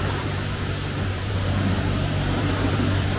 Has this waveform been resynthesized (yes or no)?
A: yes